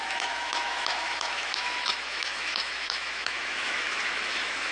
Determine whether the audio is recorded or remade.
remade